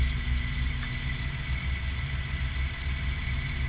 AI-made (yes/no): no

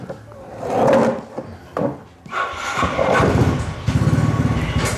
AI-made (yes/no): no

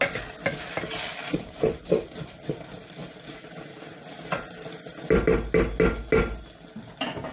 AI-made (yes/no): no